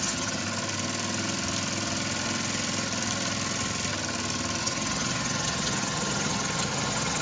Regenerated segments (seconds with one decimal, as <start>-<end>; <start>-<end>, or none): 0.0-0.4; 4.6-7.2